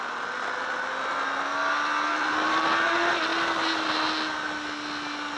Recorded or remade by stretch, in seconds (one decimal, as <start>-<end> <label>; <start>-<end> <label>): 0.0-5.4 recorded